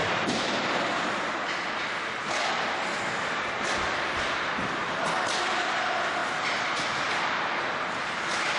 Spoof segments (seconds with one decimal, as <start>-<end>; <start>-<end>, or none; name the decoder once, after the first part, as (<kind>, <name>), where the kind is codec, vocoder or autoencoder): 4.8-5.3 (vocoder, BigVGAN v2)